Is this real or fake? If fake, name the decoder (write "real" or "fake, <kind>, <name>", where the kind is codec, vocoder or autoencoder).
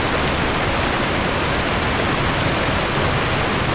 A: real